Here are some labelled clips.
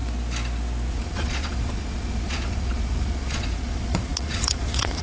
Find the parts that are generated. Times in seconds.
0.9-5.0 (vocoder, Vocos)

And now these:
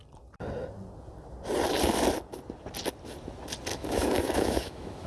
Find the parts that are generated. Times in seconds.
3.7-5.1 (autoencoder, DAC-VAE)

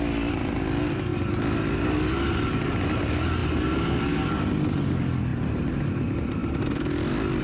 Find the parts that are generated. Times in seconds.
6.4-7.4 (vocoder, BigVGAN v2)

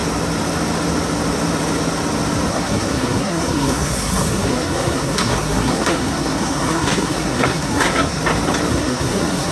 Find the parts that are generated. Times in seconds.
2.5-8.2 (codec, SNAC); 8.7-9.5

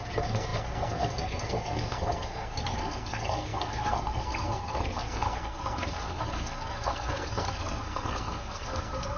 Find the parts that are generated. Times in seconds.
0.0-9.2 (codec, SNAC)

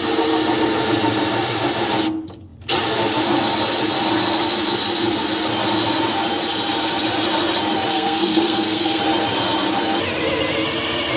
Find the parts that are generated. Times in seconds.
7.9-9.0 (codec, SNAC)

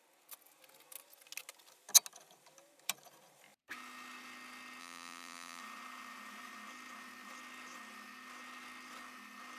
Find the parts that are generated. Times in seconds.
4.8-5.6 (vocoder, BigVGAN v2)

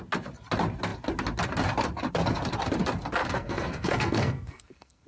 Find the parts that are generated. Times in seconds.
3.2-5.1 (codec, SNAC)